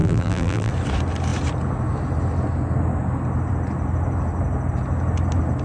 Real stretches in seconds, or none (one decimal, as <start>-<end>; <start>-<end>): 0.7-5.6